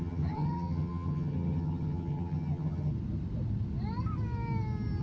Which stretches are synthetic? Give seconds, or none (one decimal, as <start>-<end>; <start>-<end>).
0.0-2.9